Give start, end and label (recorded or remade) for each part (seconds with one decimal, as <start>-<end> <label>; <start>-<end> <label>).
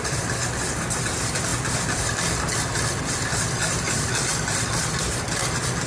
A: 0.0-1.5 recorded; 1.5-5.0 remade; 5.0-5.9 recorded